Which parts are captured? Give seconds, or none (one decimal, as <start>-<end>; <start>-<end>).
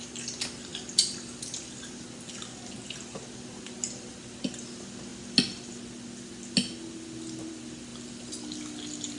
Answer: 0.0-9.2